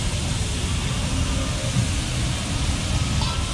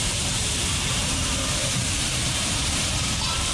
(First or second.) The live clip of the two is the first